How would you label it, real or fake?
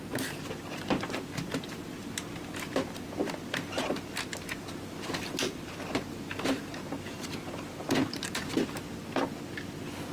real